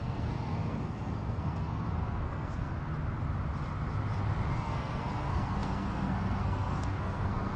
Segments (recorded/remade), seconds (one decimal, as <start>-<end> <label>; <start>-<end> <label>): 0.0-2.7 remade; 2.7-4.5 recorded; 4.5-7.6 remade